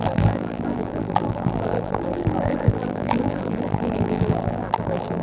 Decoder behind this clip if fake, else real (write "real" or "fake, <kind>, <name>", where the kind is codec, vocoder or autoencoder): fake, vocoder, BigVGAN v2